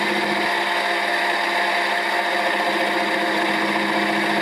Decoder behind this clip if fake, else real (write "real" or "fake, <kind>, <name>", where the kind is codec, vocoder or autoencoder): real